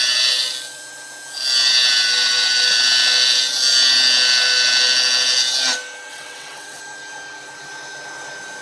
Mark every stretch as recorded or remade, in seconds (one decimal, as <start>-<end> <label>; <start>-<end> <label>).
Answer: 0.0-6.1 recorded; 6.1-6.8 remade; 6.8-8.6 recorded